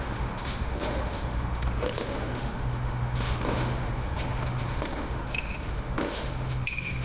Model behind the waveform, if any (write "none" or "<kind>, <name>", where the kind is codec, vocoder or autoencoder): autoencoder, DAC-VAE